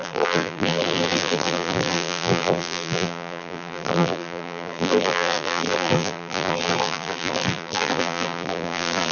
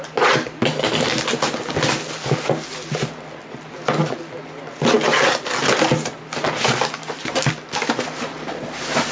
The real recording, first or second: second